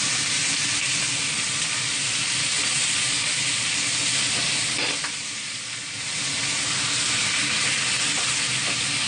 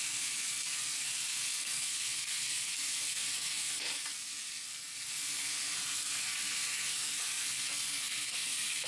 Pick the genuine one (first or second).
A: first